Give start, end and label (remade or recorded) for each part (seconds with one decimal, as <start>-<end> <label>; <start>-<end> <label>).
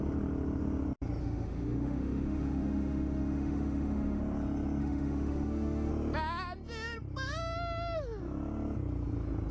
0.0-1.2 recorded; 1.2-4.2 remade; 4.2-4.8 recorded; 4.8-5.9 remade; 5.9-9.5 recorded